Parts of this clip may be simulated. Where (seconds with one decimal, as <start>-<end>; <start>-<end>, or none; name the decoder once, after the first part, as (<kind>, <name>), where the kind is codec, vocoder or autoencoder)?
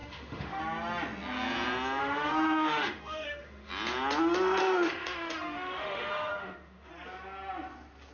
0.0-0.6 (autoencoder, DAC-VAE); 2.0-3.7; 4.6-6.9